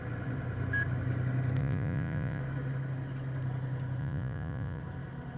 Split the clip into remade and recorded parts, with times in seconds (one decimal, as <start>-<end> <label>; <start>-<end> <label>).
0.0-1.6 recorded; 1.6-2.4 remade; 2.4-4.0 recorded; 4.0-4.8 remade; 4.8-5.4 recorded